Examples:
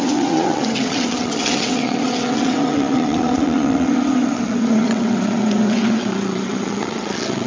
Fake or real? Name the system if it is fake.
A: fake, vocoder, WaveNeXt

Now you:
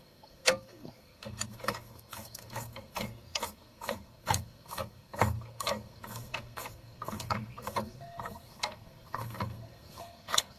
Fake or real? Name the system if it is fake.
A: fake, codec, SNAC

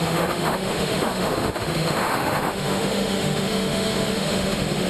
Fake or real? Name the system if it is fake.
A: fake, autoencoder, DAC-VAE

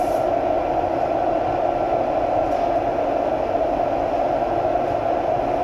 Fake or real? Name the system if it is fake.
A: real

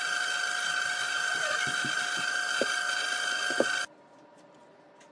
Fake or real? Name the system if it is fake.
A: real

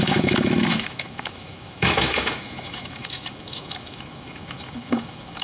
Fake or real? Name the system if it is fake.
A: fake, autoencoder, DAC-VAE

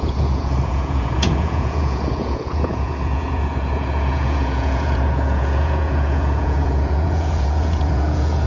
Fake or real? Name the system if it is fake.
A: fake, vocoder, Vocos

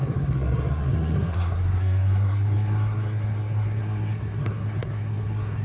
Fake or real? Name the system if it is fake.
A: fake, codec, SNAC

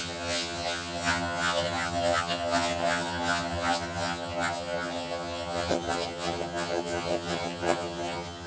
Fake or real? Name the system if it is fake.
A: fake, vocoder, HiFi-GAN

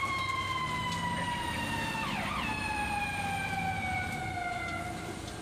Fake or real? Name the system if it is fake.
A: real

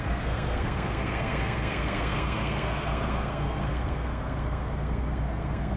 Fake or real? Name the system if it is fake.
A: fake, codec, SNAC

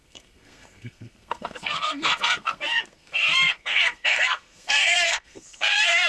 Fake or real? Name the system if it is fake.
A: fake, codec, SNAC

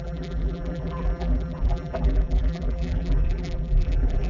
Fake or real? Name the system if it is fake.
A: fake, vocoder, BigVGAN v2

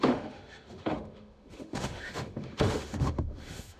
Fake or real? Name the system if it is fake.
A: fake, autoencoder, DAC-VAE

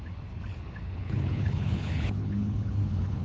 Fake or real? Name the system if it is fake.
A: fake, codec, HILCodec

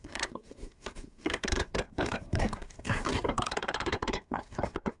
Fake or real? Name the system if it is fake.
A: fake, codec, SNAC